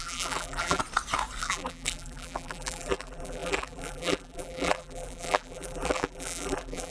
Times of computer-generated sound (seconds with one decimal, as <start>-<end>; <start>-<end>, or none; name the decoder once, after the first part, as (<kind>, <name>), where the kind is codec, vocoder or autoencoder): 0.0-0.8 (vocoder, BigVGAN v2); 1.4-6.9